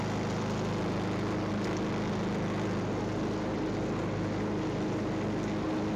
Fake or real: real